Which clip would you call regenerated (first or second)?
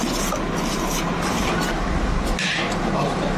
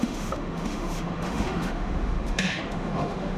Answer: second